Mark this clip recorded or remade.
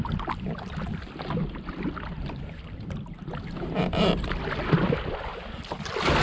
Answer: recorded